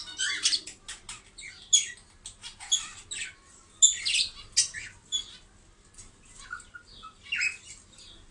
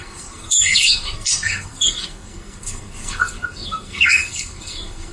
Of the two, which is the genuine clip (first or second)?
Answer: first